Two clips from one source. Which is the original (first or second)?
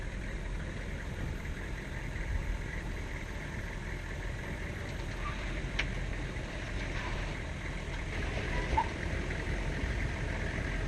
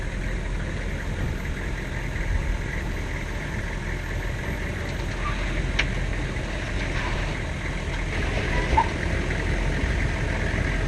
second